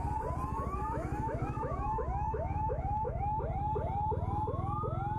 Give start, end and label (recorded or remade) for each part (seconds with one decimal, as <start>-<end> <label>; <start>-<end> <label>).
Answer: 0.0-0.5 recorded; 0.5-3.2 remade; 3.2-5.2 recorded